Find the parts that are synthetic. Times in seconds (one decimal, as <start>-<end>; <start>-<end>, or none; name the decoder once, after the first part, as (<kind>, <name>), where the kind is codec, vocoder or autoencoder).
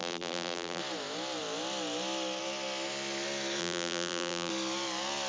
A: 0.0-0.8 (vocoder, BigVGAN v2); 3.6-4.5